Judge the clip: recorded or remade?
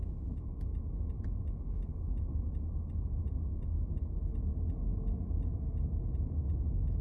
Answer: recorded